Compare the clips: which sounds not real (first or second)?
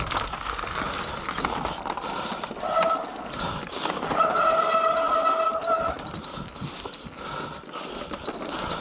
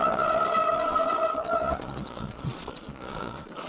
second